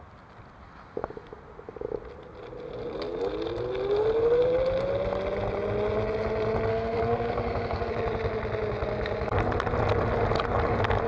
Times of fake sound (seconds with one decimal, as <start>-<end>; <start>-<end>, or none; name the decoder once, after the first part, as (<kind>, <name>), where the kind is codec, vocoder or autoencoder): 6.7-7.9 (codec, SNAC)